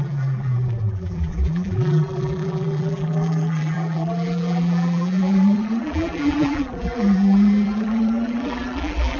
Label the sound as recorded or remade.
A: remade